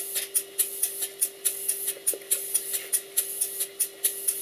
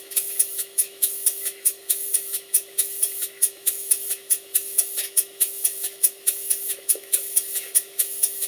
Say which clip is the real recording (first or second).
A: first